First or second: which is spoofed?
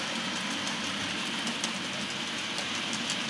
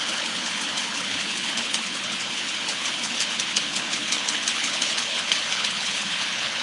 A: second